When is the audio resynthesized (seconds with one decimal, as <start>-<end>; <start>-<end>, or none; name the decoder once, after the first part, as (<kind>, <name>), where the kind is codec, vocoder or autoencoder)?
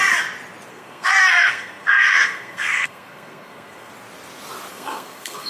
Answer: 0.7-3.9 (codec, SNAC); 4.7-5.5